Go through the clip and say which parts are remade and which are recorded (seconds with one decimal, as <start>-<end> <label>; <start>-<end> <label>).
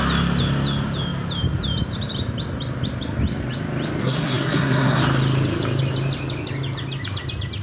0.0-4.0 recorded; 4.0-5.0 remade; 5.0-7.6 recorded